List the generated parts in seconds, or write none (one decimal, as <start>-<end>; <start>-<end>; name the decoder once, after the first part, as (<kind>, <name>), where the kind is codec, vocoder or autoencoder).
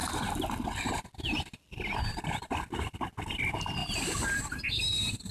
3.8-5.3 (vocoder, BigVGAN v2)